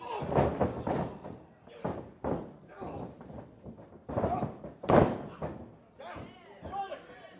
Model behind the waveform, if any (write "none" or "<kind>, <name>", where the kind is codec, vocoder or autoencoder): none